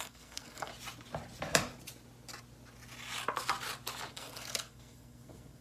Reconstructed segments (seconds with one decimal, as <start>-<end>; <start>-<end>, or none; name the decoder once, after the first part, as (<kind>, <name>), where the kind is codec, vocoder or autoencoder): 0.0-0.7 (codec, SNAC); 4.1-5.6